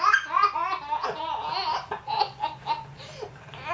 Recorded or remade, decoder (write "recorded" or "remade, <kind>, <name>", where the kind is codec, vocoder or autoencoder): recorded